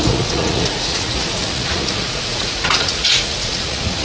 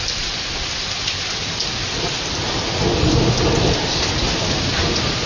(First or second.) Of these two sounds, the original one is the second